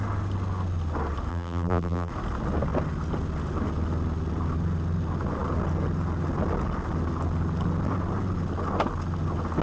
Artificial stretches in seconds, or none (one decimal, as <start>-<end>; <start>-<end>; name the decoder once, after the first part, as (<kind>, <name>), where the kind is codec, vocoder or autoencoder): 1.3-2.1 (vocoder, BigVGAN v2)